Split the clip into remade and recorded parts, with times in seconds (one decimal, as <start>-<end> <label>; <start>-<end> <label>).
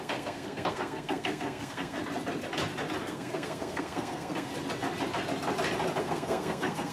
0.0-2.0 remade; 2.0-3.0 recorded; 3.0-4.5 remade; 4.5-6.0 recorded; 6.0-6.9 remade